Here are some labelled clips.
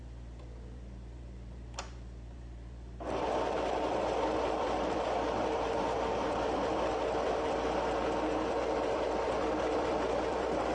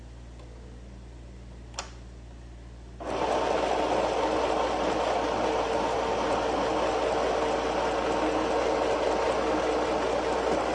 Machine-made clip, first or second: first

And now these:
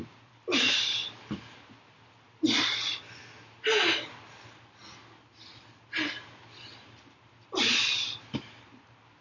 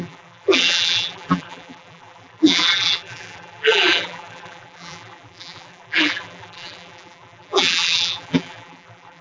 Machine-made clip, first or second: second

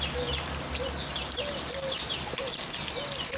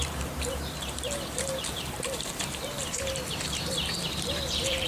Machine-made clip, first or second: second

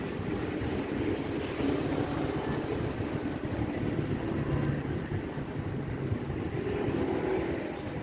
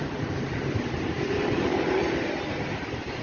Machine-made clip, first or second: second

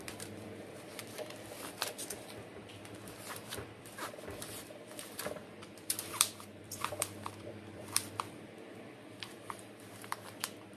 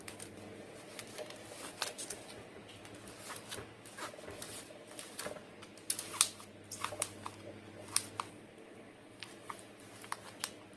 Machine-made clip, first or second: first